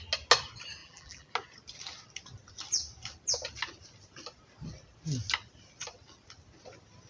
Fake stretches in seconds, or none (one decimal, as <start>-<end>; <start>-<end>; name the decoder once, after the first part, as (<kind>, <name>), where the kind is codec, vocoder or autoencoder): 0.8-1.3 (vocoder, BigVGAN v2)